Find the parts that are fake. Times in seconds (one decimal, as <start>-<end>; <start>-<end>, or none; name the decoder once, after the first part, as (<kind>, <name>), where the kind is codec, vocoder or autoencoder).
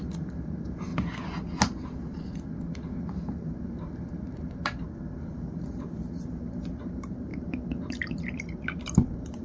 0.0-0.9 (vocoder, BigVGAN v2); 3.0-9.4